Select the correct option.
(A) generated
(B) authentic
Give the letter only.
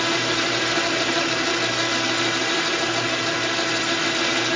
B